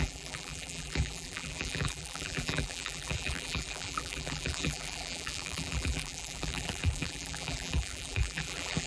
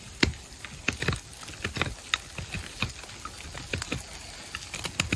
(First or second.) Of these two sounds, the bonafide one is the second